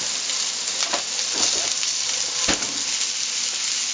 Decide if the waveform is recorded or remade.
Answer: recorded